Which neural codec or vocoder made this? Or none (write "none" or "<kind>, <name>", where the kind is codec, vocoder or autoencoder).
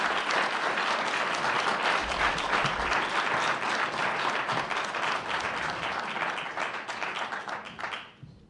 none